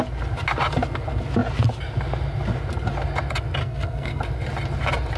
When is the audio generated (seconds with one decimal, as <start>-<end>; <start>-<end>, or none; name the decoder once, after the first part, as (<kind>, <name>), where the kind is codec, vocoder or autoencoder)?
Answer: 3.6-4.2 (codec, SNAC)

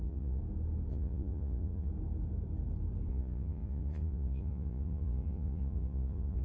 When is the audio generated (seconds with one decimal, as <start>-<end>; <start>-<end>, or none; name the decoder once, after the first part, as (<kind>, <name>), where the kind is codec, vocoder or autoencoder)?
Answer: 0.0-0.4 (vocoder, Vocos); 0.9-1.9; 3.1-6.4

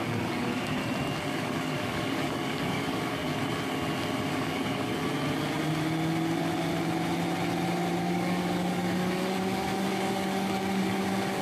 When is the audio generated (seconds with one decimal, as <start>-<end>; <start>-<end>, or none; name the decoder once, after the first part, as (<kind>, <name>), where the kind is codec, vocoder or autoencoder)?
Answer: 0.0-0.8 (codec, DAC); 1.3-3.3; 4.3-4.9; 8.0-11.4

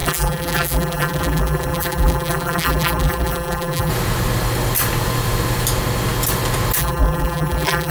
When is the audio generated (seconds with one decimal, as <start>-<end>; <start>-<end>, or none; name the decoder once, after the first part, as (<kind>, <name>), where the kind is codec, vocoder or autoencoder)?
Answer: 0.0-3.9 (vocoder, BigVGAN v2); 6.8-7.9

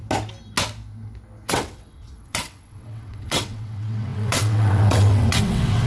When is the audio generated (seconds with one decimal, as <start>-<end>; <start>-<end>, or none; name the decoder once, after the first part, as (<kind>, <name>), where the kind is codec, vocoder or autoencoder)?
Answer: 1.5-5.9 (vocoder, WaveNeXt)